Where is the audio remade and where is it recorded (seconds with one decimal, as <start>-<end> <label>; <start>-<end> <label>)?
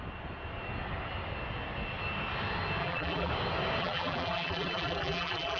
0.0-2.8 recorded; 2.8-3.3 remade; 3.3-3.8 recorded; 3.8-5.6 remade